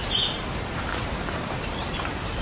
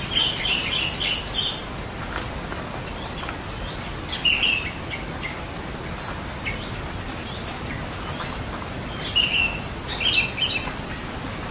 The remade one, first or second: first